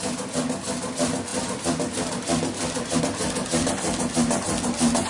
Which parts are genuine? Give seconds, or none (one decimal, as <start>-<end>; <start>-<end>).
0.0-5.1